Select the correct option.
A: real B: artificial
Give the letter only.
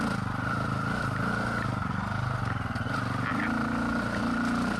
A